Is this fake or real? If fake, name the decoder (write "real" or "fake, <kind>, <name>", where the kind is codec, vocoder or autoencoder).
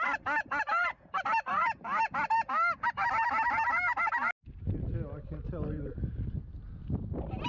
real